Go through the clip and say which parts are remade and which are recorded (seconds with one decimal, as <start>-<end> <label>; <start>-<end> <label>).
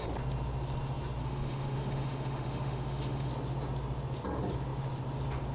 0.0-1.2 recorded; 1.2-3.3 remade; 3.3-5.5 recorded